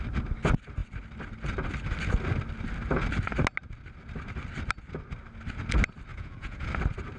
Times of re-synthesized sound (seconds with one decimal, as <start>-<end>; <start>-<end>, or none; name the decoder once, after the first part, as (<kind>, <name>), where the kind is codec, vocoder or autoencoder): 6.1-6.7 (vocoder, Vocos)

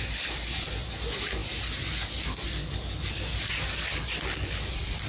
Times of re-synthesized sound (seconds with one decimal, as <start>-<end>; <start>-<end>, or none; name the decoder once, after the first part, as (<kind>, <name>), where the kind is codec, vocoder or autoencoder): none

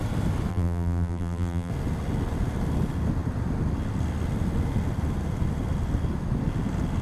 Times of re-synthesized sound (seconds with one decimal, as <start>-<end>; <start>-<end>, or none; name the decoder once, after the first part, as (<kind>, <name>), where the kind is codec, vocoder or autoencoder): 0.5-1.7 (vocoder, BigVGAN v2)

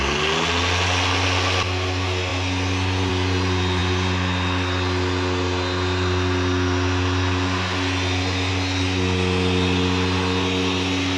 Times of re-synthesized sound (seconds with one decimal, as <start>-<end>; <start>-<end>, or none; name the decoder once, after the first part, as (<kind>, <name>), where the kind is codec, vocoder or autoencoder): none